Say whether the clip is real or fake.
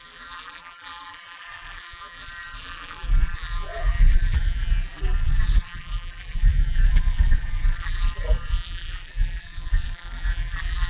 fake